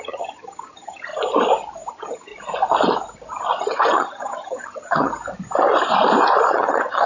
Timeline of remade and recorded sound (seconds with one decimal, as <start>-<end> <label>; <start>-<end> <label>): 0.0-1.1 remade; 1.1-1.9 recorded; 1.9-2.3 remade; 2.3-3.6 recorded; 3.6-5.1 remade; 5.1-6.5 recorded; 6.5-7.1 remade